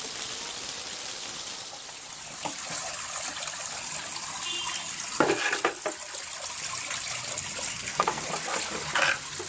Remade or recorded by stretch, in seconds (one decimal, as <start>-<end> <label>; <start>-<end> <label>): 0.0-7.7 recorded; 7.7-8.2 remade; 8.2-9.5 recorded